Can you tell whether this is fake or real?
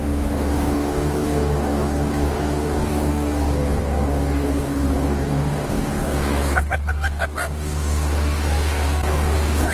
fake